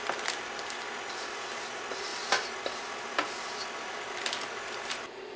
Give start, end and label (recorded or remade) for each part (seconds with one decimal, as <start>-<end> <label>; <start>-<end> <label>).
0.0-5.4 recorded